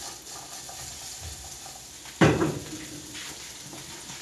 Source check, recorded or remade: recorded